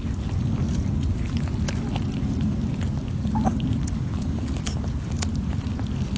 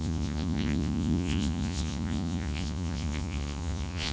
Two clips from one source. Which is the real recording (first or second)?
first